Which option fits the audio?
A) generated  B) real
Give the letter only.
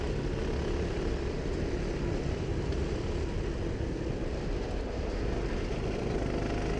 B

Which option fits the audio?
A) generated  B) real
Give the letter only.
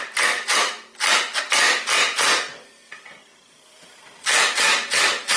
B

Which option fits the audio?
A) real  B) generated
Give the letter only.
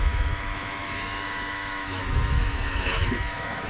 B